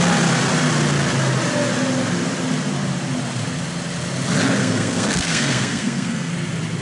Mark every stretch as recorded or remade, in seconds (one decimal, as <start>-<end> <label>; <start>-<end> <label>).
0.0-4.6 recorded; 4.6-6.3 remade; 6.3-6.8 recorded